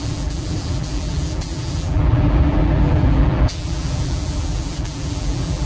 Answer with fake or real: fake